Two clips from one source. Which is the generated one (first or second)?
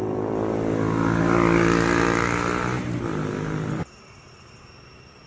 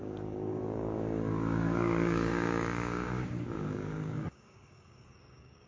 second